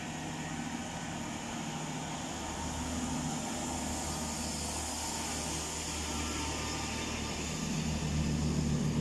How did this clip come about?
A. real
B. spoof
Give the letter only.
A